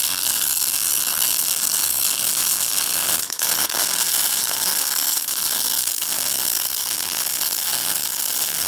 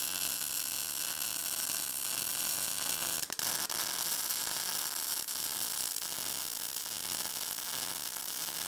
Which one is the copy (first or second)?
first